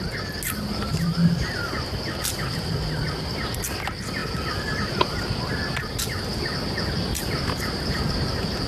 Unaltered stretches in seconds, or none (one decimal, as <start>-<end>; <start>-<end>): 0.0-8.7